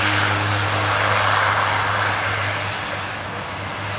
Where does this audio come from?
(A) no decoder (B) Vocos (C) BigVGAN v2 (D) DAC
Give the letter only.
A